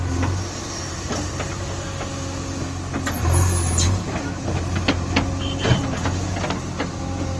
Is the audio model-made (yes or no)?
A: no